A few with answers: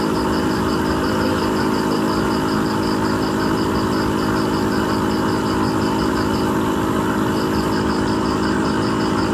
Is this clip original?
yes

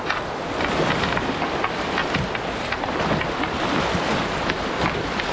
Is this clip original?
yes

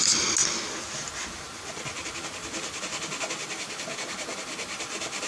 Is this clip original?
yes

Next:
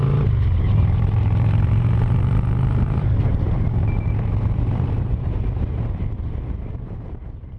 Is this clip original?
no